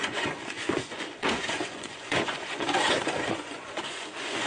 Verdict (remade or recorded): remade